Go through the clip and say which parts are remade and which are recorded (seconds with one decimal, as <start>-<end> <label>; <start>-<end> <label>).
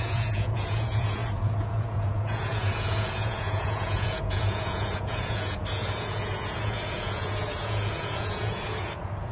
0.0-9.3 remade